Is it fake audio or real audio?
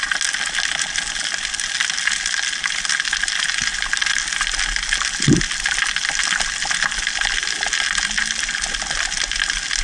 real